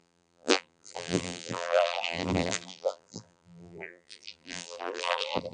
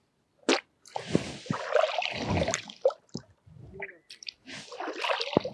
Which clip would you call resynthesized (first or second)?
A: first